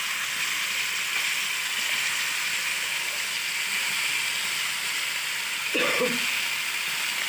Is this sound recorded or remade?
recorded